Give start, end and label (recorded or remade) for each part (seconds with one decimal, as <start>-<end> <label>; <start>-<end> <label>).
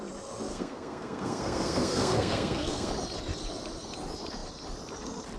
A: 0.0-0.5 recorded; 0.5-2.9 remade; 2.9-5.4 recorded